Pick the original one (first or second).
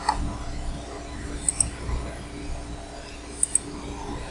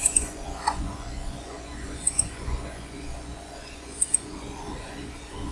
first